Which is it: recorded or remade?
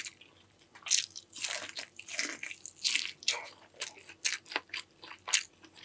recorded